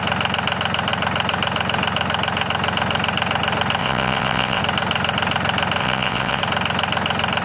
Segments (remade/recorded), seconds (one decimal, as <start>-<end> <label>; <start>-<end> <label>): 0.0-3.8 recorded; 3.8-4.6 remade; 4.6-5.8 recorded; 5.8-6.4 remade; 6.4-7.4 recorded